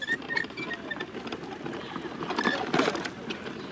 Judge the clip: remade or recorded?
recorded